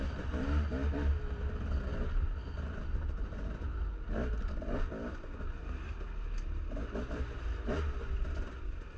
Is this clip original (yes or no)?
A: yes